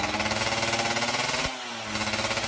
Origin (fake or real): real